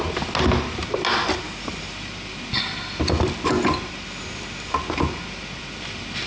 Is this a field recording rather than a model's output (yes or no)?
yes